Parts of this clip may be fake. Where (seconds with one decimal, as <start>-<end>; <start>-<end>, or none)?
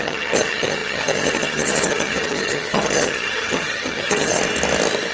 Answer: 0.0-4.4